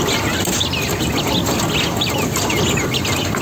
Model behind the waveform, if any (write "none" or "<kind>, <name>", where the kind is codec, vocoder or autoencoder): none